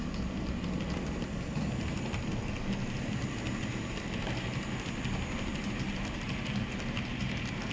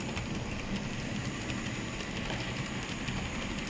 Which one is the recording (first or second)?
first